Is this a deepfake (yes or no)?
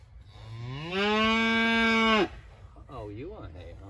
no